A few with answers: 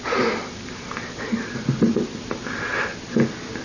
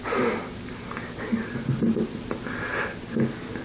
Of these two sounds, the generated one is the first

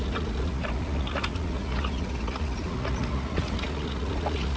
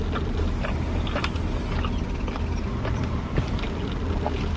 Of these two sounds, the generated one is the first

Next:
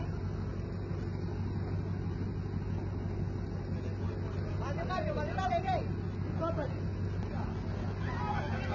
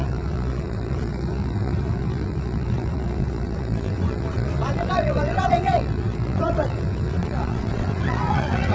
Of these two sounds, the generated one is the second